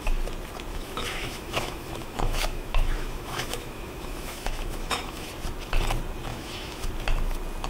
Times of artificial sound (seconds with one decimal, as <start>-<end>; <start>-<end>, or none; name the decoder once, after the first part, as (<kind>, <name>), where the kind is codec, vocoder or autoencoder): 0.7-5.3 (autoencoder, DAC-VAE); 6.3-6.9